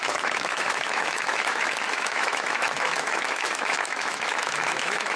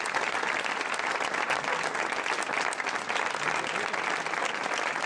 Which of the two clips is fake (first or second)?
first